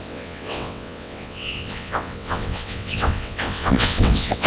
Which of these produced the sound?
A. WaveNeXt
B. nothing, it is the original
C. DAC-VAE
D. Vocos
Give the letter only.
A